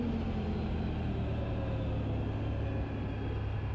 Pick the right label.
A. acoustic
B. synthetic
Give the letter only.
A